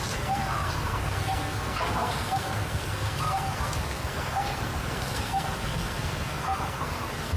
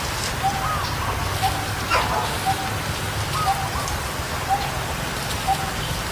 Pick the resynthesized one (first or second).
first